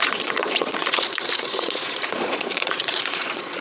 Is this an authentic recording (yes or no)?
no